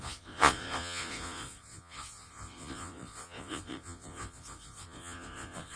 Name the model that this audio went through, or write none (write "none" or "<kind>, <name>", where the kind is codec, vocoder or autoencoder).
vocoder, Vocos